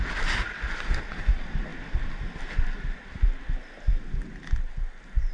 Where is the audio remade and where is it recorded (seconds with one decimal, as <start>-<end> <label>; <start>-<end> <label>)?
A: 0.0-5.3 recorded